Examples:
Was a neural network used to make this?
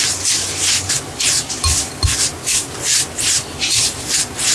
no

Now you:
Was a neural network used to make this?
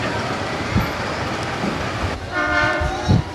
yes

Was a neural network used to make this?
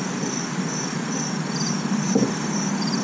no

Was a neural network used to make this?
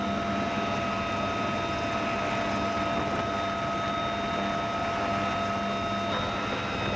no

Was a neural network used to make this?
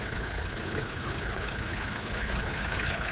yes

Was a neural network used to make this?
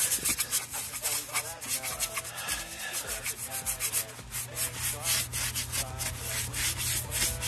no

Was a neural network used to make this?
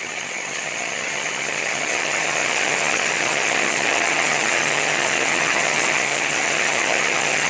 yes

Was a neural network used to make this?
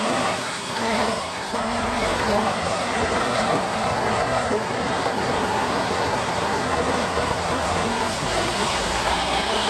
yes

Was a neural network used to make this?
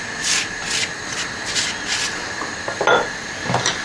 no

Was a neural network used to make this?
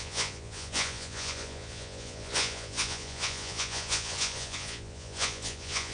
yes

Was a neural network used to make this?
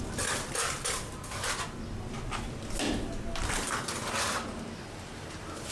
no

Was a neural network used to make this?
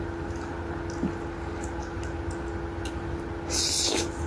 no